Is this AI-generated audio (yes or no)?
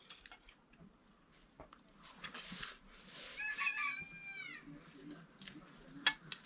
no